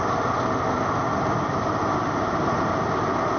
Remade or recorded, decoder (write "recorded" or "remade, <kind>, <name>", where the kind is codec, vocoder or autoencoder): recorded